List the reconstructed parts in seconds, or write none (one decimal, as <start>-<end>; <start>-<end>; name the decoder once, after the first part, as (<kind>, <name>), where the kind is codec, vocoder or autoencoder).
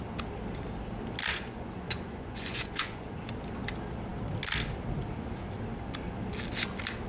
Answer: 1.3-3.3 (vocoder, Vocos)